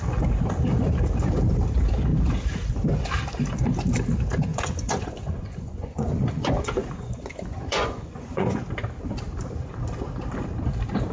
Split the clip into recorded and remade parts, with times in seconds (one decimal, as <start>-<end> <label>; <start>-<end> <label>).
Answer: 0.0-4.5 recorded; 4.5-8.6 remade; 8.6-11.1 recorded